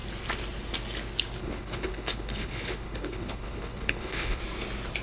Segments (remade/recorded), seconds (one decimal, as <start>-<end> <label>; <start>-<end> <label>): 0.0-1.4 recorded; 1.4-4.4 remade; 4.4-5.0 recorded